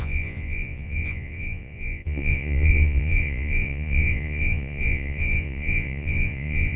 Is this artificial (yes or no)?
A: yes